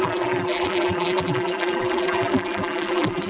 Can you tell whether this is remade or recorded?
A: remade